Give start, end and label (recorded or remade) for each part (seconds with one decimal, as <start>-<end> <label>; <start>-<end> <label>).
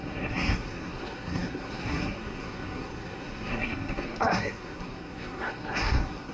0.0-6.3 remade